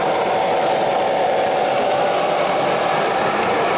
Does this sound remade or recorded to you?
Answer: recorded